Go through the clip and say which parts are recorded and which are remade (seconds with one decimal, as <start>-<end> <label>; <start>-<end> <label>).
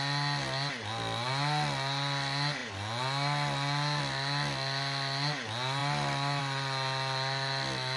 0.0-8.0 recorded